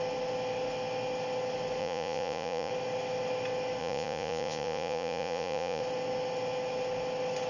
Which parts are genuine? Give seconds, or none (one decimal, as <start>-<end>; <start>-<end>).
0.0-1.8; 2.7-3.8; 5.8-7.5